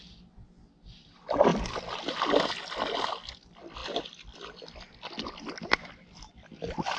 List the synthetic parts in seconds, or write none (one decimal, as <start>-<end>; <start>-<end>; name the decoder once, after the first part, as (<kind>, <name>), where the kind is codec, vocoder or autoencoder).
none